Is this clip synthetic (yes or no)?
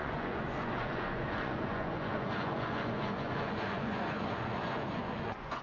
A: yes